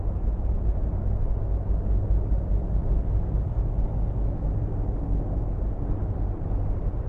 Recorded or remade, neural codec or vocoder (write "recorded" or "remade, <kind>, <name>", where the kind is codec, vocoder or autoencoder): recorded